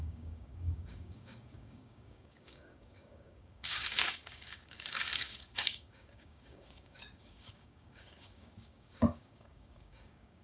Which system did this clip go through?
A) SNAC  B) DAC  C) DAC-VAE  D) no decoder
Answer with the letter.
B